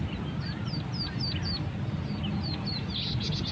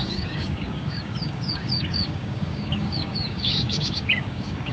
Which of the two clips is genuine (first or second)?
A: first